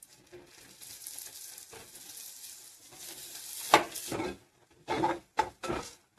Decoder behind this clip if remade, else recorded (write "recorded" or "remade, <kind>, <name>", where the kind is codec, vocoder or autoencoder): recorded